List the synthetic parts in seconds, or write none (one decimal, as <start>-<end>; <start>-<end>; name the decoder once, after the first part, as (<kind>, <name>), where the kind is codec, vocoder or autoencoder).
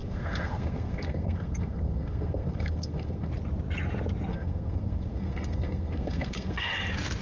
0.0-3.3 (codec, SNAC); 4.3-6.7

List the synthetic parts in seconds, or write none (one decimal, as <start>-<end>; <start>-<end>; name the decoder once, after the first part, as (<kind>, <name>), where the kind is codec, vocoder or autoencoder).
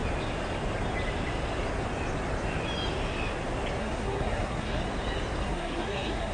3.8-4.8 (codec, SNAC); 5.4-6.3